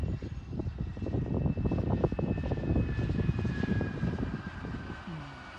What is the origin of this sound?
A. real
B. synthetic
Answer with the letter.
A